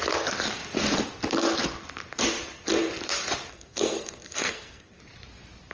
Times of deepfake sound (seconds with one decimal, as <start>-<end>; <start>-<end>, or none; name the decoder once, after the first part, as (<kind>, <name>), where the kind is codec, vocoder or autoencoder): 3.5-5.0 (codec, SNAC)